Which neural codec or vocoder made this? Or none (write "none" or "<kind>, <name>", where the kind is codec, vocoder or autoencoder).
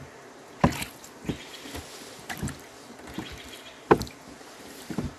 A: none